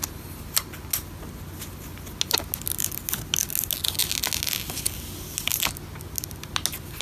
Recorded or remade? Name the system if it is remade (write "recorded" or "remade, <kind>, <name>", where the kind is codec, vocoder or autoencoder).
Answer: recorded